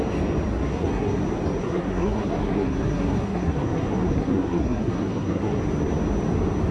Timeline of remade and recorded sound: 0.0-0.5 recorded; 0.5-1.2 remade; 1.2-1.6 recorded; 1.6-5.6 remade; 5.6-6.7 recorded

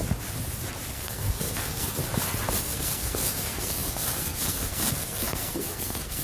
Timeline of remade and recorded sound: 0.0-0.9 recorded; 0.9-2.0 remade; 2.0-2.6 recorded; 2.6-6.2 remade